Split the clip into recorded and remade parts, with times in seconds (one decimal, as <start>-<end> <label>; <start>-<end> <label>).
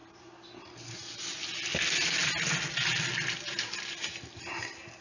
0.0-1.3 remade; 1.3-5.0 recorded